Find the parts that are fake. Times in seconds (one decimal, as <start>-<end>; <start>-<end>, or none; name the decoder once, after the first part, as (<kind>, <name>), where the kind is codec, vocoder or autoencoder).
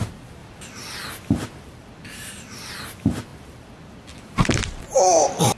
0.0-0.4 (vocoder, BigVGAN v2); 1.6-5.6